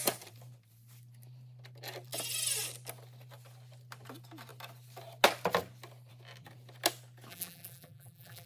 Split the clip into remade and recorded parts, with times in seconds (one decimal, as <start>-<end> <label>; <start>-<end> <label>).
0.0-7.3 recorded; 7.3-8.5 remade